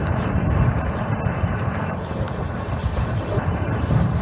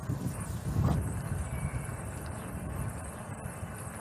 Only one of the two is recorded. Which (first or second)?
second